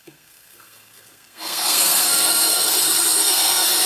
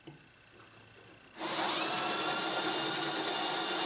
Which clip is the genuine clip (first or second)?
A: second